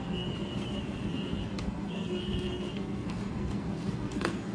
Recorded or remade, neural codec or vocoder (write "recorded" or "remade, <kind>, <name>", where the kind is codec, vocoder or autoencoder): remade, codec, SNAC